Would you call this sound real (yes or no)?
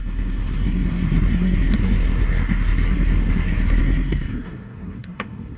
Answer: no